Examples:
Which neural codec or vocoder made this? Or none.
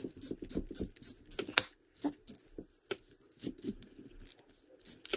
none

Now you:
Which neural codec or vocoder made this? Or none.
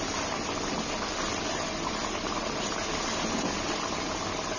none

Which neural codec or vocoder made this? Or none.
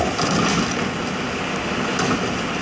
none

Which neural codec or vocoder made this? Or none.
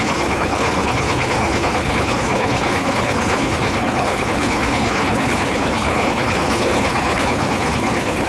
codec, HILCodec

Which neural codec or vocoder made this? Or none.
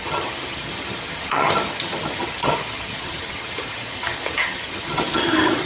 vocoder, HiFi-GAN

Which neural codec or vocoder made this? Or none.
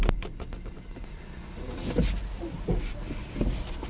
none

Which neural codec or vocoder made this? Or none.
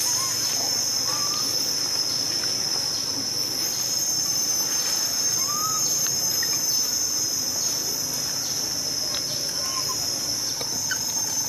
none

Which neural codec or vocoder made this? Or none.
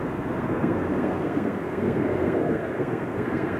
codec, SNAC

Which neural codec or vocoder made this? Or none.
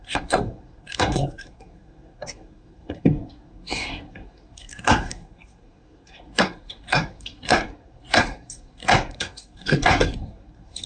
codec, SNAC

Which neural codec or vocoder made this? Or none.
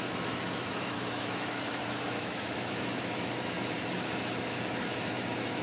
autoencoder, DAC-VAE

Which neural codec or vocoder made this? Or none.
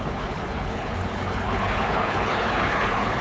codec, HILCodec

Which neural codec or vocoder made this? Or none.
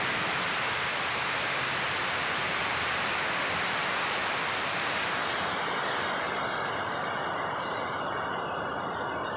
none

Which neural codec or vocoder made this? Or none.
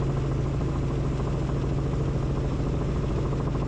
none